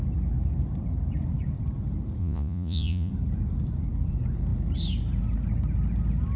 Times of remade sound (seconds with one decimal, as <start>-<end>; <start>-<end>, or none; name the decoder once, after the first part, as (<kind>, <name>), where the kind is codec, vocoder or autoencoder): 2.2-3.1 (vocoder, Vocos)